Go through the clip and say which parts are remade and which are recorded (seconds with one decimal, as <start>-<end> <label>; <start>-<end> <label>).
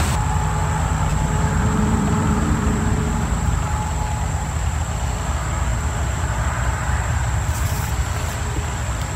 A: 0.0-1.1 recorded; 1.1-3.9 remade; 3.9-5.7 recorded; 5.7-7.9 remade; 7.9-9.2 recorded